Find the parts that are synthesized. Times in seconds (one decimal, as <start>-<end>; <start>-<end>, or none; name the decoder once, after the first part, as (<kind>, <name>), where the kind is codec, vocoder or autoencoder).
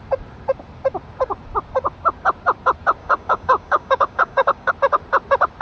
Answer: 3.0-4.7 (codec, DAC)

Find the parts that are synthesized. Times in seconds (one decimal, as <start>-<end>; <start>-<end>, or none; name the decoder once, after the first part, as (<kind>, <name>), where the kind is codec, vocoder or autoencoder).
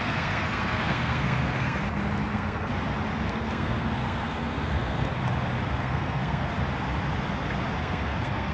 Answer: 0.0-1.8 (codec, SNAC); 2.3-2.7; 3.3-5.1; 5.7-6.5; 7.8-8.5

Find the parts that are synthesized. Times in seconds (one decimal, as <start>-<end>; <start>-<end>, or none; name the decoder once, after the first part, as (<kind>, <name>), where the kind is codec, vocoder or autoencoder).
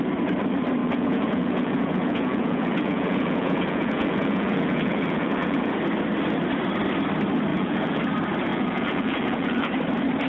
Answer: 0.8-5.7 (vocoder, Vocos); 7.5-8.0; 8.5-9.7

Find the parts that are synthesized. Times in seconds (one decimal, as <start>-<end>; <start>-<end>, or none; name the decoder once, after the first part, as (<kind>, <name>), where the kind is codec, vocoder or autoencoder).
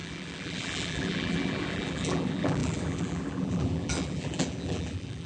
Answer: 0.0-5.3 (vocoder, BigVGAN v2)